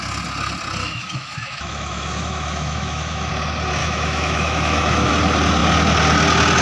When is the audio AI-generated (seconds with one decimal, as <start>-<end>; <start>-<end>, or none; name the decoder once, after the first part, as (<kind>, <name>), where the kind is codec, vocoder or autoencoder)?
0.8-3.3 (autoencoder, DAC-VAE); 3.8-5.1

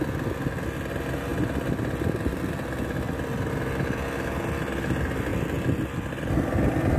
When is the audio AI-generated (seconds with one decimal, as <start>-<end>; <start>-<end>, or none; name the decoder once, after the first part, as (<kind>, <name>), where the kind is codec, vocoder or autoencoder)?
none

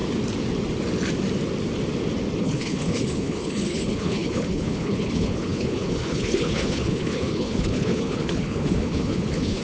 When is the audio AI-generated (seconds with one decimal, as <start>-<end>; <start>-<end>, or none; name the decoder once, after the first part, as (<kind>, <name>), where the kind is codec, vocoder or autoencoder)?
2.4-9.6 (codec, HILCodec)

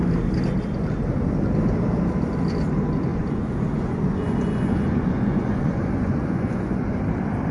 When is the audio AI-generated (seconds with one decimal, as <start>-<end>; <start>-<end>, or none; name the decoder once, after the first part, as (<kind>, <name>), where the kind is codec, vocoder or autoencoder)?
3.1-7.0 (vocoder, Vocos)